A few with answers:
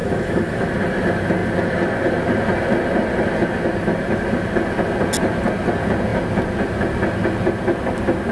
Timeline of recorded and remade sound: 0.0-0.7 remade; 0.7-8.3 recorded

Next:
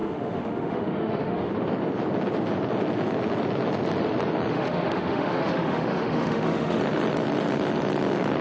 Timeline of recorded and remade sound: 0.0-1.5 remade; 1.5-4.5 recorded; 4.5-6.8 remade; 6.8-8.4 recorded

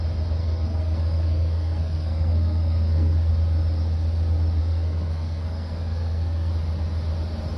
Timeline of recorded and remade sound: 0.0-0.4 recorded; 0.4-3.3 remade; 3.3-4.6 recorded; 4.6-6.5 remade; 6.5-7.6 recorded

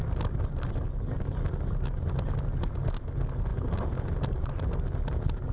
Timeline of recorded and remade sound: 0.0-5.5 recorded

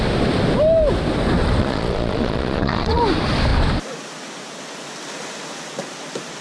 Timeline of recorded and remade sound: 0.0-1.6 recorded; 1.6-3.0 remade; 3.0-6.4 recorded

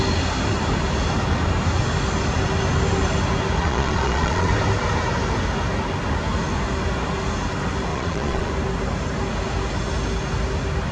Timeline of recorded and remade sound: 0.0-3.6 recorded; 3.6-4.5 remade; 4.5-7.9 recorded; 7.9-8.5 remade; 8.5-10.9 recorded

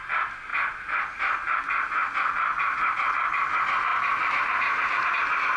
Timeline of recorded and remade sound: 0.0-2.5 recorded; 2.5-3.1 remade; 3.1-3.9 recorded; 3.9-5.1 remade; 5.1-5.6 recorded